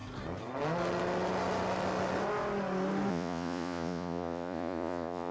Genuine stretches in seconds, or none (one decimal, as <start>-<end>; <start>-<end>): 0.0-3.1